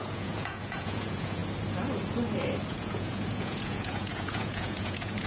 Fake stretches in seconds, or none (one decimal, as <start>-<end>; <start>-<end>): 0.0-1.4; 2.7-5.3

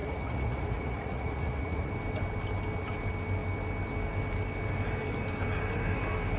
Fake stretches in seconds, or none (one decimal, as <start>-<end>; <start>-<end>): 0.0-1.9

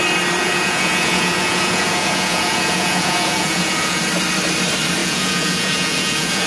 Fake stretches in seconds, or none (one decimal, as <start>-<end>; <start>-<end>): 0.4-4.0; 5.0-6.5

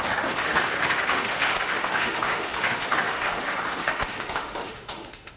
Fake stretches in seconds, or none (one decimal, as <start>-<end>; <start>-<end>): 0.0-5.4

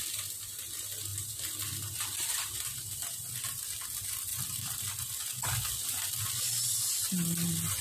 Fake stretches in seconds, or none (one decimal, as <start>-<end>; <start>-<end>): 1.1-3.6; 4.3-5.1

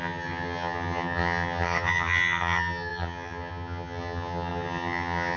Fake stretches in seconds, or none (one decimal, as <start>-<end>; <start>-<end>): 0.0-5.4

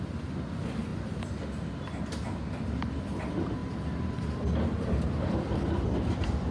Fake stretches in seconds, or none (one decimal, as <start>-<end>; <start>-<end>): none

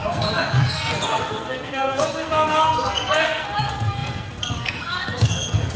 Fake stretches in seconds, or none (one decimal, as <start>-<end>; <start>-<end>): 0.0-5.8